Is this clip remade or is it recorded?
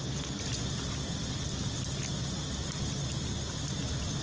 recorded